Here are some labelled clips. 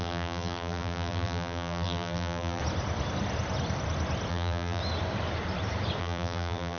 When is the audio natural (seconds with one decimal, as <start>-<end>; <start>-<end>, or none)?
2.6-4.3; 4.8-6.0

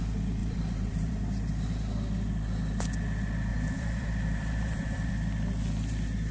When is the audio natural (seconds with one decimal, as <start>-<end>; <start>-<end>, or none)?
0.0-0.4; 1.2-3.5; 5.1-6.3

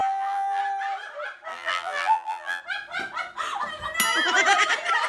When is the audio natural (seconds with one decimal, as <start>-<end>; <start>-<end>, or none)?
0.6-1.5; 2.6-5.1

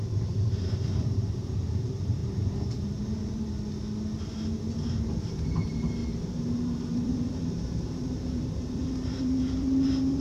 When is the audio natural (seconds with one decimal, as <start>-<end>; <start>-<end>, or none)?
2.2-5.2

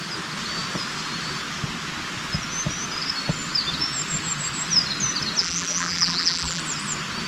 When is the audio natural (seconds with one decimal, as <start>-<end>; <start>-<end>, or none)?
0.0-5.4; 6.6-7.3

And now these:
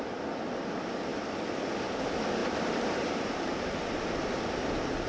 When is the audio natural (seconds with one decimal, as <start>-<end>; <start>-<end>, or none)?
0.0-2.4; 3.7-5.1

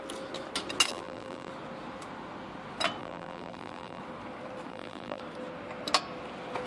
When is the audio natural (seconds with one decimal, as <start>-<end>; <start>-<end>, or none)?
0.0-0.9; 1.5-3.0; 4.0-4.7; 5.2-6.7